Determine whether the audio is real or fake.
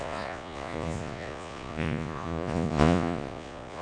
fake